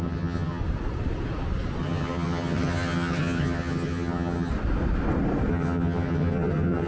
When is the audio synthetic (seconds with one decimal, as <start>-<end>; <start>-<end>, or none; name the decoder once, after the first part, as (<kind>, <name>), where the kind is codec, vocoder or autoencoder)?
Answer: 0.0-0.6 (vocoder, HiFi-GAN); 1.8-4.5; 5.5-6.9

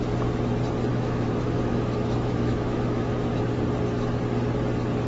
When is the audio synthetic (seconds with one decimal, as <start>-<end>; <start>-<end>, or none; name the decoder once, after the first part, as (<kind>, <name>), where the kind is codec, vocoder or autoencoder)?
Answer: 0.9-3.4 (autoencoder, DAC-VAE)

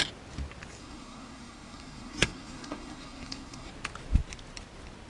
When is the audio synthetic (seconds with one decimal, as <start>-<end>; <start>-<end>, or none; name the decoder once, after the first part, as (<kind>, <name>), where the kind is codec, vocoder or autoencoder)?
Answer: 0.8-3.7 (codec, SNAC)

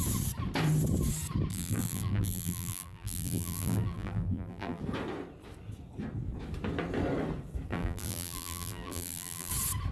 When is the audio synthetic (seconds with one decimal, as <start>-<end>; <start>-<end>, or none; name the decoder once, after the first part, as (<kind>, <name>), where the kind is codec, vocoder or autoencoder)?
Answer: 1.5-4.8 (vocoder, BigVGAN v2); 7.7-9.5